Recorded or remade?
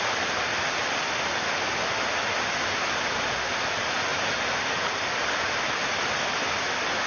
recorded